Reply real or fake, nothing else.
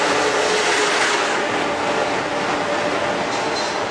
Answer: real